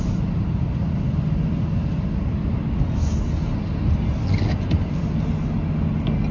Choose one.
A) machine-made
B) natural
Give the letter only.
B